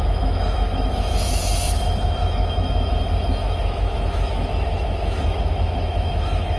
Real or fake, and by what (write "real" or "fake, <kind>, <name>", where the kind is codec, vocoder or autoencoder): fake, autoencoder, DAC-VAE